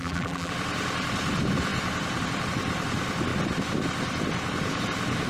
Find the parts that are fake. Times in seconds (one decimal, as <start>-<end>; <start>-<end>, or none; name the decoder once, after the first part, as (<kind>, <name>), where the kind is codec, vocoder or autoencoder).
0.0-0.5 (vocoder, BigVGAN v2)